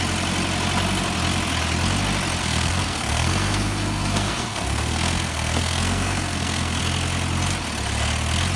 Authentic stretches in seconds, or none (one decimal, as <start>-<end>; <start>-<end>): 0.0-2.4; 6.8-8.6